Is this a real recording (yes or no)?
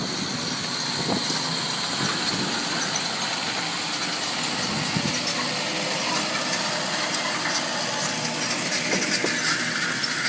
yes